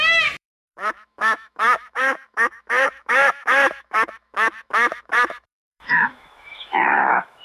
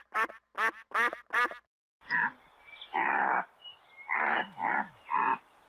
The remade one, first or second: first